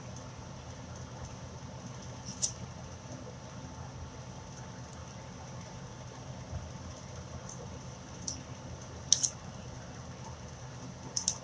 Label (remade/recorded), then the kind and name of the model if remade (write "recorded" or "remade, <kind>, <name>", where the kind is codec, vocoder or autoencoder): recorded